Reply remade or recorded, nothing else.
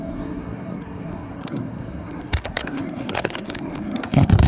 remade